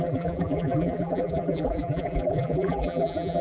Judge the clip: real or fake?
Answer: fake